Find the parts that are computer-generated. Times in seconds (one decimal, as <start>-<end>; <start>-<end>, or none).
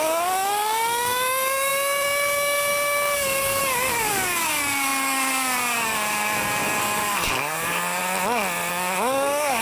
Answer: 0.0-8.0; 8.7-9.6